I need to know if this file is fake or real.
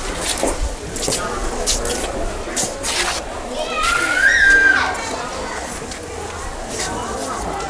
real